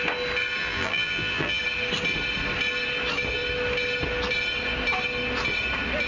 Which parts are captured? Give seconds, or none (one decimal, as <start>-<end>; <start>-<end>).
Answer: 0.0-0.6; 1.6-6.1